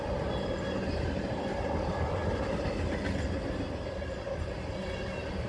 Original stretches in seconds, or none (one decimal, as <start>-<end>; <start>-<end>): 0.0-5.5